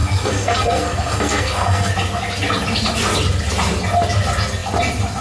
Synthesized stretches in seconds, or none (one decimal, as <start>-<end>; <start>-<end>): 0.0-1.9